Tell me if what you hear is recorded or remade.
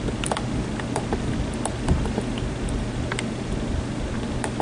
recorded